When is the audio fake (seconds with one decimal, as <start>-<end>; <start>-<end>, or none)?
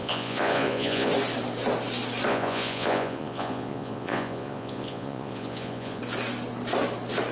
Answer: 0.0-1.1; 2.3-6.0